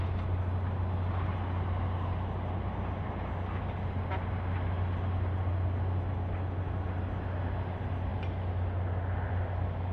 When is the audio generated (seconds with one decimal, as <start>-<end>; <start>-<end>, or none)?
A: none